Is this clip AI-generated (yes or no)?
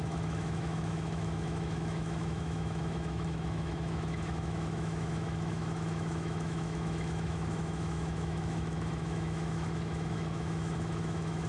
yes